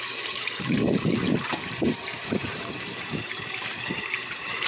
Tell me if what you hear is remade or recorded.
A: remade